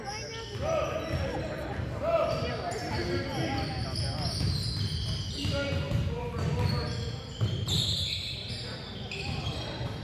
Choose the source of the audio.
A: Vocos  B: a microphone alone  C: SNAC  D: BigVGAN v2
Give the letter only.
B